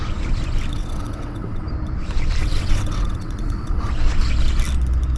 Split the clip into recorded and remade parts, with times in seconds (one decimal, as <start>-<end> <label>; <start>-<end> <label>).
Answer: 0.0-0.7 recorded; 0.7-1.6 remade; 1.6-2.4 recorded; 2.4-3.9 remade; 3.9-5.2 recorded